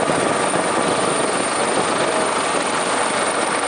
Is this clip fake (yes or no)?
no